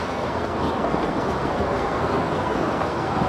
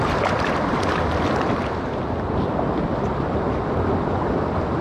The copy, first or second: first